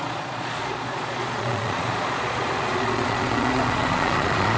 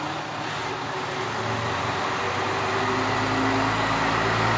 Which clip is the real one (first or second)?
second